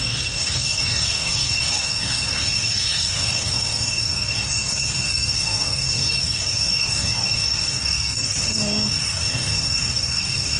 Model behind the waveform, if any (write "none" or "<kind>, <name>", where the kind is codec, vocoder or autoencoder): codec, DAC